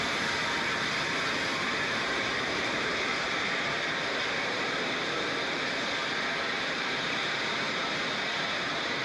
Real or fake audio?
fake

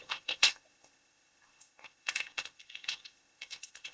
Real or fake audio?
fake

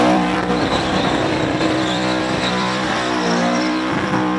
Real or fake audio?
fake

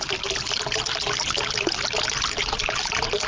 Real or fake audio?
real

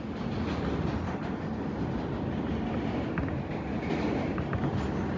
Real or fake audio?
real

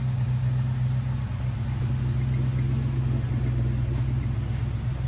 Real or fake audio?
real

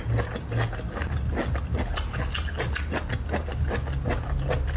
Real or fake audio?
real